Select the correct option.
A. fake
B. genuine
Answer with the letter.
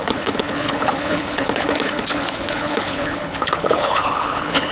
A